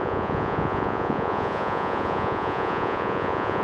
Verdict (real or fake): fake